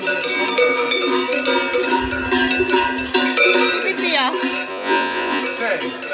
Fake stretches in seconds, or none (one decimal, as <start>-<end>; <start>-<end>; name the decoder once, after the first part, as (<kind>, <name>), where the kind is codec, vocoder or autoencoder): 4.7-5.4 (vocoder, Vocos)

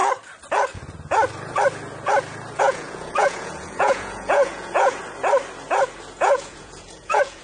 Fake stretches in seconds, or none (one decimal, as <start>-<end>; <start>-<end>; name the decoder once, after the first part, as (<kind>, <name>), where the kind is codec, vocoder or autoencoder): 2.6-5.0 (vocoder, Vocos); 6.1-7.4

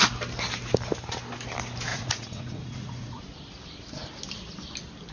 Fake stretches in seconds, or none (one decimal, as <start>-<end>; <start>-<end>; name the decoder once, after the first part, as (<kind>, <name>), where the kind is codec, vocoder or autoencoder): 1.9-3.2 (vocoder, Vocos)

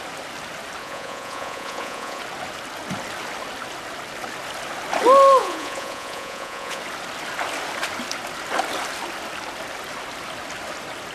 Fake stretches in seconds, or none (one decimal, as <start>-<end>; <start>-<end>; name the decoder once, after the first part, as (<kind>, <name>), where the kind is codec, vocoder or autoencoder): 0.8-2.2 (vocoder, Vocos); 5.4-6.8

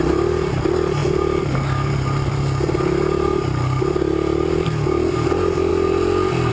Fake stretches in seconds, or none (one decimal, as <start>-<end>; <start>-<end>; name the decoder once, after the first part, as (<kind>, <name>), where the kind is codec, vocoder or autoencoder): none

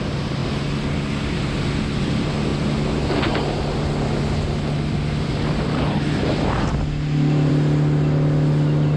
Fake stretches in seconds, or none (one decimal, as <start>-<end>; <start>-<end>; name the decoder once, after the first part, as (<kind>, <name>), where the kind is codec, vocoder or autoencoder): none

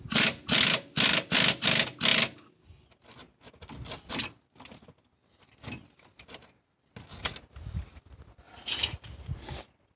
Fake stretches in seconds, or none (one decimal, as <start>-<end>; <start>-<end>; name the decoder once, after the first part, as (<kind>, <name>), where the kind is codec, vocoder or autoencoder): none